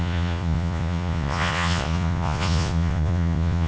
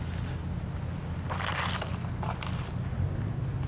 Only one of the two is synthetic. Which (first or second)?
first